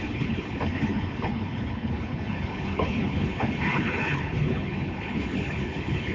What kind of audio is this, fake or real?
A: fake